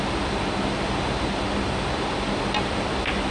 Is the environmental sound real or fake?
real